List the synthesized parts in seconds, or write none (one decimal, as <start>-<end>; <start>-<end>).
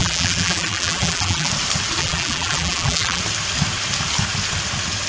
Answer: 0.0-1.5; 2.0-3.2